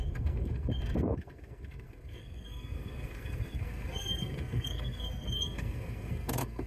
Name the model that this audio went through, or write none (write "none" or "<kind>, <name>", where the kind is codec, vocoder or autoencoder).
codec, SNAC